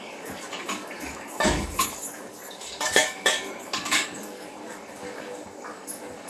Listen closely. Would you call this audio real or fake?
fake